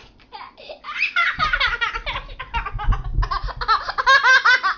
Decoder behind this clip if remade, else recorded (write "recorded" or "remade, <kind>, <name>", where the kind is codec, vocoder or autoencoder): recorded